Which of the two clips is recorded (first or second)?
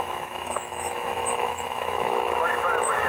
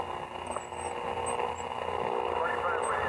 second